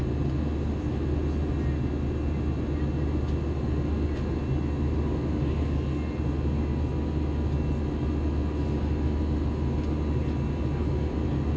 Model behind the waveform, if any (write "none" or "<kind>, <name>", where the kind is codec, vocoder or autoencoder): none